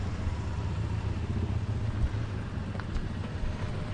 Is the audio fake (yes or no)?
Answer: no